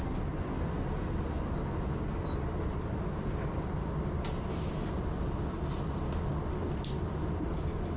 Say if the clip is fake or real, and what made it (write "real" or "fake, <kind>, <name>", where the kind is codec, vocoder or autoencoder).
real